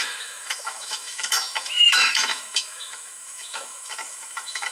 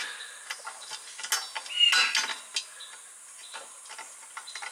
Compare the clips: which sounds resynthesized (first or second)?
first